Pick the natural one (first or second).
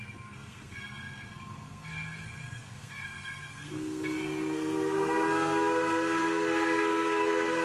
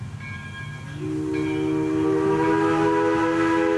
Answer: second